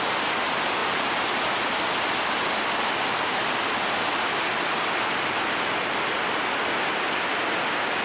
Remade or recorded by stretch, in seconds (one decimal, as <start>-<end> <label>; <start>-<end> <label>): 0.0-8.0 recorded